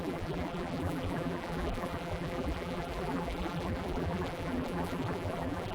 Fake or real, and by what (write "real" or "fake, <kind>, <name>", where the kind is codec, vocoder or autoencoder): fake, vocoder, BigVGAN v2